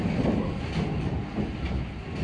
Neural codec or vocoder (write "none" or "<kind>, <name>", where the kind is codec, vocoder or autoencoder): vocoder, BigVGAN v2